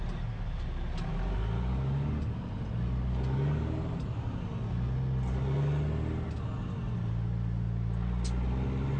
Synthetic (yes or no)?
no